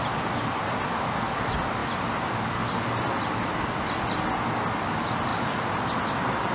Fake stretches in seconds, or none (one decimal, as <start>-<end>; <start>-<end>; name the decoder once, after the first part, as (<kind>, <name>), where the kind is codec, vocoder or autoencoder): none